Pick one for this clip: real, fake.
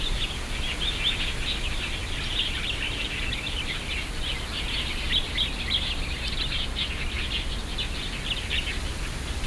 real